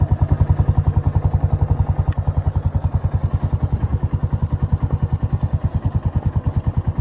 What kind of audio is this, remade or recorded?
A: recorded